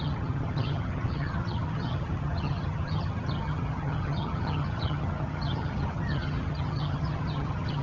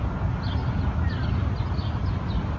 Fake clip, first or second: first